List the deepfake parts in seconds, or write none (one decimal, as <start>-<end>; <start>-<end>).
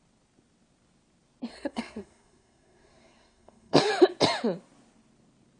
1.5-3.9